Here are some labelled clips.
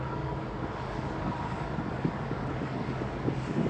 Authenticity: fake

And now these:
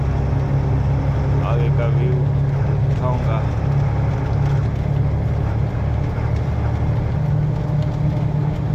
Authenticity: real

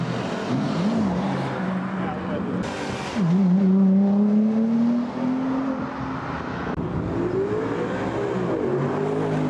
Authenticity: real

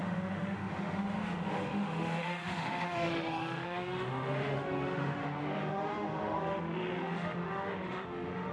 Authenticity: fake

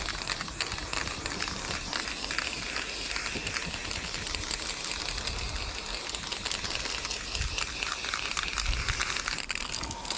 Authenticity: real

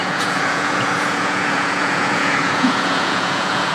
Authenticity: fake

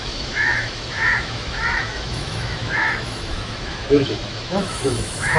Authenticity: fake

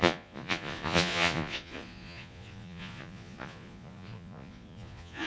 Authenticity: fake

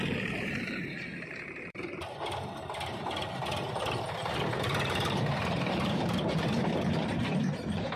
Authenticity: fake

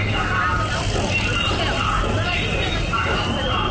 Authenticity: real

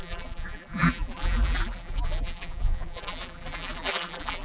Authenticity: fake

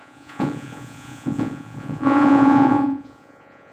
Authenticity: fake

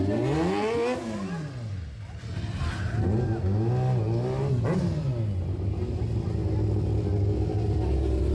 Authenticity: real